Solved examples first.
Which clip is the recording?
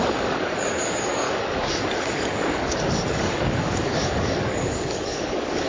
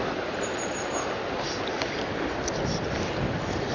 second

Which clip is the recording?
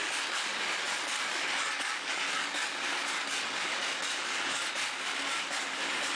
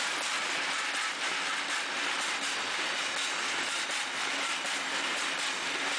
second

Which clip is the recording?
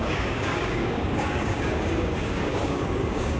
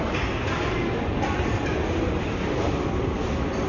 second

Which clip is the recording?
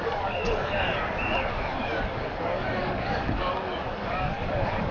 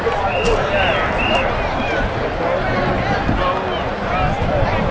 second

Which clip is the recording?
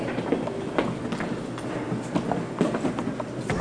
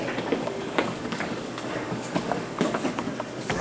first